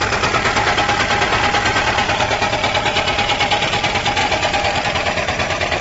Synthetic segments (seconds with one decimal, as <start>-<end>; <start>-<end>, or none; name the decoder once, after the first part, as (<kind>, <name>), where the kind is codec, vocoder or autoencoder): 4.2-5.8 (vocoder, BigVGAN v2)